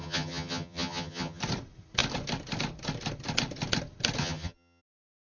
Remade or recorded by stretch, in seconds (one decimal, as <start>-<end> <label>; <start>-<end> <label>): 0.0-1.4 remade; 1.4-4.2 recorded; 4.2-4.8 remade; 4.8-5.4 recorded